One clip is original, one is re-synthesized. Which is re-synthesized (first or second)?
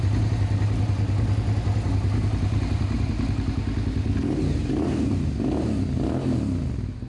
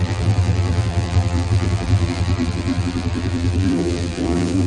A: second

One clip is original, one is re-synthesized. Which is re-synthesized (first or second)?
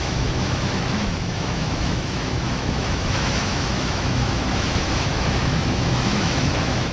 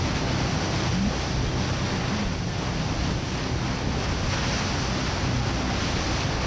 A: first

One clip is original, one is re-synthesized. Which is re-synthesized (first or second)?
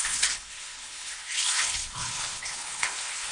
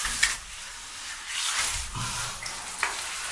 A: first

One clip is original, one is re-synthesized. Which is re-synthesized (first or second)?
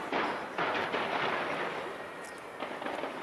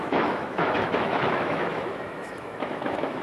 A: second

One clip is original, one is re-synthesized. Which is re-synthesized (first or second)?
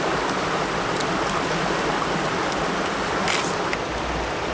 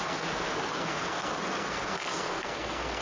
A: second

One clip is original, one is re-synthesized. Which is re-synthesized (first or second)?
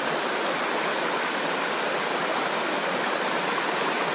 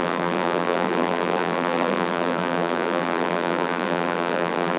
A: second